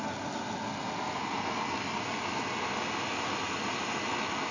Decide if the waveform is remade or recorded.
recorded